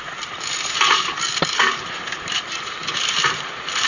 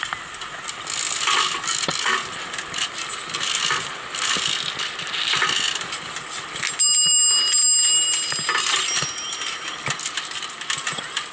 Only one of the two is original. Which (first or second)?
second